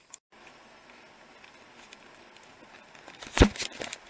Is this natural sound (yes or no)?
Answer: yes